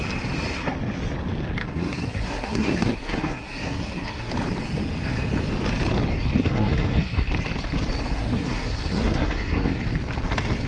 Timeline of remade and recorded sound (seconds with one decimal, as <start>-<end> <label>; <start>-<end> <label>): 0.0-1.6 recorded; 1.6-4.3 remade; 4.3-6.4 recorded; 6.4-7.3 remade; 7.3-8.2 recorded; 8.2-9.8 remade; 9.8-10.7 recorded